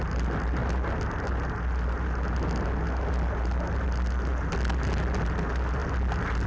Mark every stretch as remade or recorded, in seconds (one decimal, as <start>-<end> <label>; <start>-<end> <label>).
0.0-6.5 recorded